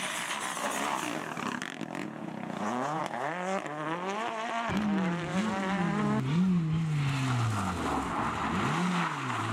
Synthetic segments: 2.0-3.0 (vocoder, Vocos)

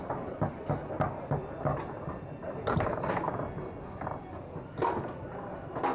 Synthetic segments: none

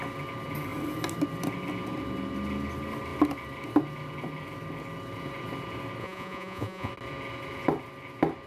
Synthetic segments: 6.0-6.9 (vocoder, Vocos)